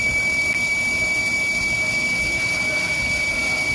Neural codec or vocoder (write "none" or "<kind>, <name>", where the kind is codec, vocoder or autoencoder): none